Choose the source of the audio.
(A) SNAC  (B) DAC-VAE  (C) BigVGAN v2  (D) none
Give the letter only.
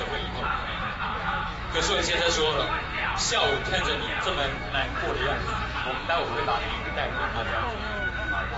B